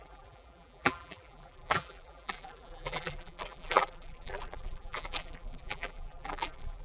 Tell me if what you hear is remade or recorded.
remade